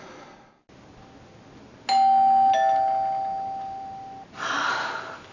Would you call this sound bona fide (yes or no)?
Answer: yes